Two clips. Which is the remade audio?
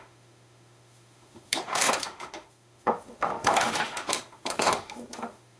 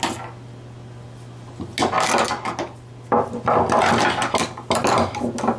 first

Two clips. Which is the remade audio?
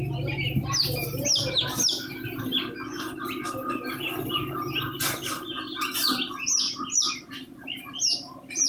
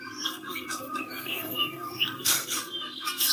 second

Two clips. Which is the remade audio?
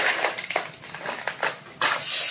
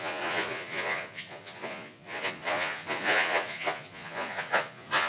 second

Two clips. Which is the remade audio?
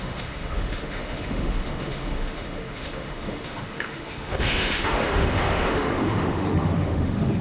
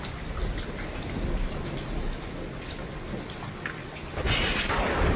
first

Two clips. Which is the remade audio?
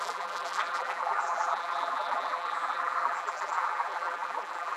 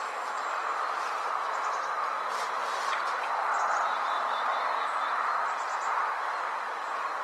first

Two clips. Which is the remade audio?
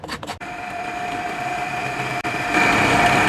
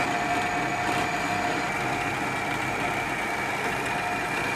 first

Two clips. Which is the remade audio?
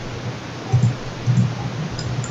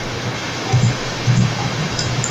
second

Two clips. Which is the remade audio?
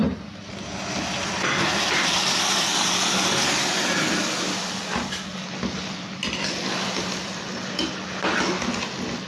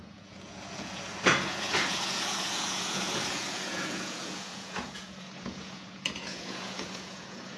second